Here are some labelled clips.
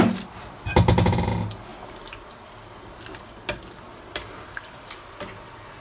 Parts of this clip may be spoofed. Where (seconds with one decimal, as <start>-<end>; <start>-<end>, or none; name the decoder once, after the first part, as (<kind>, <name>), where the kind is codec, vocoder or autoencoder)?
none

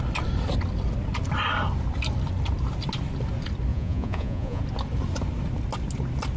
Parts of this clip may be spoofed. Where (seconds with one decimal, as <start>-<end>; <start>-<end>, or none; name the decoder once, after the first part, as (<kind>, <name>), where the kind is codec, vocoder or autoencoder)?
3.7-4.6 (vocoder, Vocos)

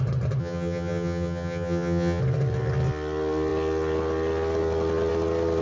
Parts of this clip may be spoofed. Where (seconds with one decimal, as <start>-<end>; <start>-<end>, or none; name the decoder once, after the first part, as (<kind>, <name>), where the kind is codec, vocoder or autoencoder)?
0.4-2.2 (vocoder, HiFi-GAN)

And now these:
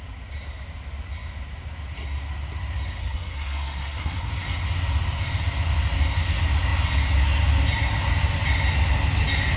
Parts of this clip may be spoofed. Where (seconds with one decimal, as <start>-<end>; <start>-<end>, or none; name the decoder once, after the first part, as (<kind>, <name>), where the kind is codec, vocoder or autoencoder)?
3.0-4.3 (codec, SNAC)

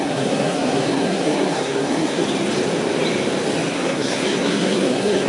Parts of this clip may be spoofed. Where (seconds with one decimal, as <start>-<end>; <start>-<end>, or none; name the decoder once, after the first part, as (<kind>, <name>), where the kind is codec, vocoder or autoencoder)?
0.0-2.2 (codec, SNAC); 3.7-5.3

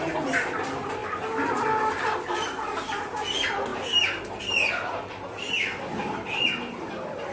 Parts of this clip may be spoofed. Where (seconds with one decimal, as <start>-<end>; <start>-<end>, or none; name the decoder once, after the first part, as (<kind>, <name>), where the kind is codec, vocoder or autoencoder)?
none

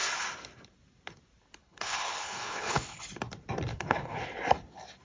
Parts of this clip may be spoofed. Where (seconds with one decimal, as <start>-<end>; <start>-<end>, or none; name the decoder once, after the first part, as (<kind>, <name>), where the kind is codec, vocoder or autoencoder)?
1.6-3.0 (codec, HILCodec); 3.7-4.2